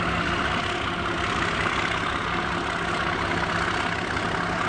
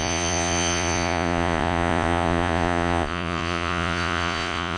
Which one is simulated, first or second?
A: second